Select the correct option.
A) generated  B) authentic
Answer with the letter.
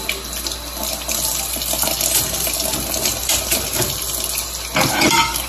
B